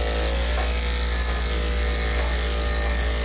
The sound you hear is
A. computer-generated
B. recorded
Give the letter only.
B